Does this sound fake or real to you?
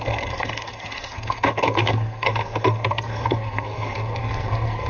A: fake